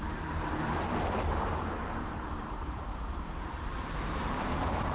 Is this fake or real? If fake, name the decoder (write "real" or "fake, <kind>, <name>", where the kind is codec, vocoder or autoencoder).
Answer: fake, vocoder, BigVGAN v2